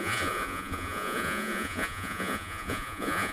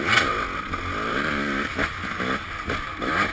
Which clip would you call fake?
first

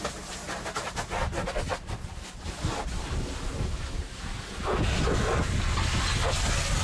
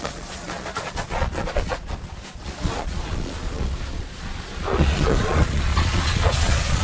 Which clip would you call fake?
second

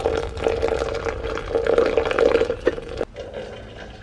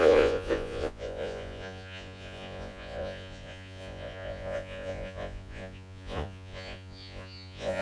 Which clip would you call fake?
second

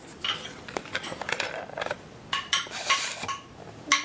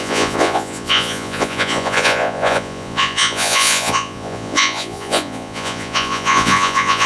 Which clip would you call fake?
second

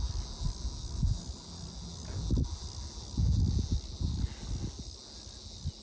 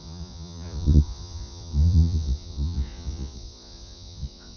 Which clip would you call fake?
second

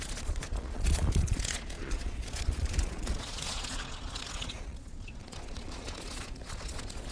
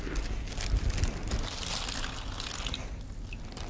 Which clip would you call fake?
first